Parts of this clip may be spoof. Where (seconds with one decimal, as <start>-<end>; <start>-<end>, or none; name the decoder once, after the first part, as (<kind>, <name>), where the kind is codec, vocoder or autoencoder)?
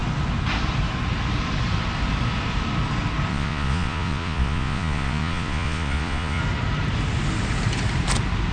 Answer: 3.3-6.4 (vocoder, Vocos)